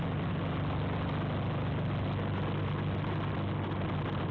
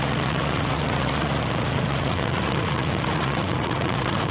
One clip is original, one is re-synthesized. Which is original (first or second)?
first